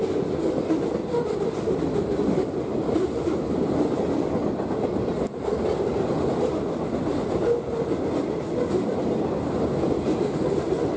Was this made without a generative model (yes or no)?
yes